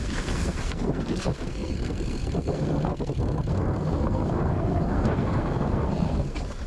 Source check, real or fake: fake